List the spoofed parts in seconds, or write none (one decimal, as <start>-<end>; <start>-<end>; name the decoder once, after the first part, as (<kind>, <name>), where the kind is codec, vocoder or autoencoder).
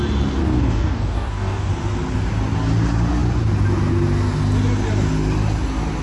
0.4-1.7 (codec, DAC)